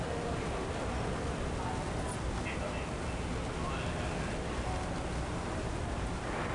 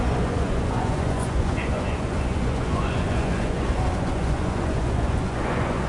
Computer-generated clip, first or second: second